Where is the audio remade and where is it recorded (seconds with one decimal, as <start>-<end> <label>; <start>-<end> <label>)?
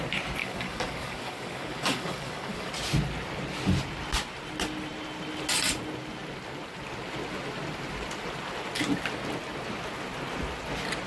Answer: 0.0-0.4 recorded; 0.4-2.7 remade; 2.7-11.1 recorded